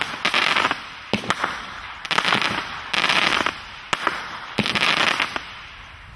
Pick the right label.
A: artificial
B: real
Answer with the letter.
B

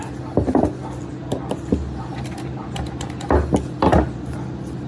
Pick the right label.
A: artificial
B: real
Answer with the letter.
B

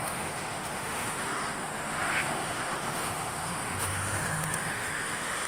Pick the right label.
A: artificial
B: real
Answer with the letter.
A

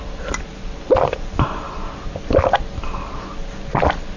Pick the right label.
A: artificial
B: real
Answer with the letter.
B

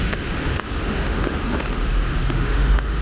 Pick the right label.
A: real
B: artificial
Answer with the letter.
B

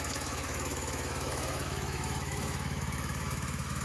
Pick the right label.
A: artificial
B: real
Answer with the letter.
A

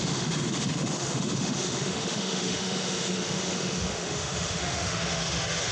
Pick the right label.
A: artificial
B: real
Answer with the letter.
A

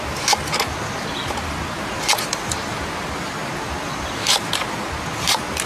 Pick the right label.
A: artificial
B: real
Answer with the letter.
B